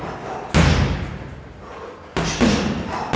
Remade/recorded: recorded